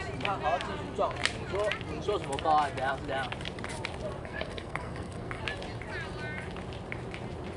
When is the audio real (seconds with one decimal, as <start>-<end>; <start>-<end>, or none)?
0.0-4.2; 5.4-7.6